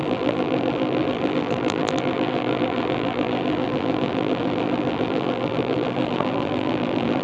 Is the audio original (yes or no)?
no